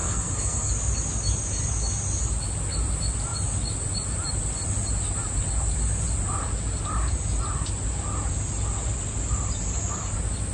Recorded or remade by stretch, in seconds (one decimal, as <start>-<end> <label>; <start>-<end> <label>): 0.0-0.7 remade; 0.7-10.5 recorded